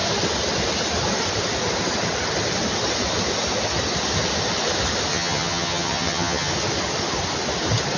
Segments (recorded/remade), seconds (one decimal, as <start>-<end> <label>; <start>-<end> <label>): 0.0-5.1 recorded; 5.1-6.5 remade; 6.5-8.0 recorded